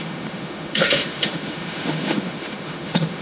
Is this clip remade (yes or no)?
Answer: yes